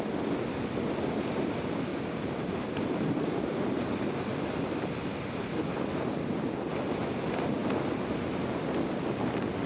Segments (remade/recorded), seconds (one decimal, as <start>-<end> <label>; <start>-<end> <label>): 0.0-1.9 recorded; 1.9-3.7 remade; 3.7-4.3 recorded; 4.3-5.2 remade; 5.2-9.7 recorded